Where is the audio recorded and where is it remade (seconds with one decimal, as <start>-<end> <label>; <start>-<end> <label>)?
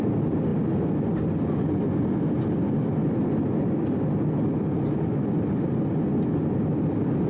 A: 0.0-7.3 recorded